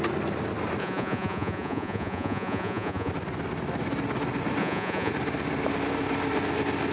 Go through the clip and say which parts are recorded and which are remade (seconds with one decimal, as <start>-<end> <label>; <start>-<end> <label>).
0.0-0.8 recorded; 0.8-3.1 remade; 3.1-4.6 recorded; 4.6-5.1 remade; 5.1-6.9 recorded